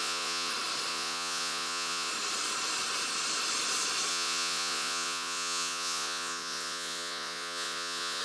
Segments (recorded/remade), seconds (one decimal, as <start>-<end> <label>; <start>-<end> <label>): 0.0-0.5 remade; 0.5-0.9 recorded; 0.9-2.1 remade; 2.1-4.1 recorded; 4.1-8.2 remade